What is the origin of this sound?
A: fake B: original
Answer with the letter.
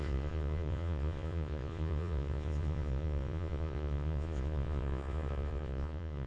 A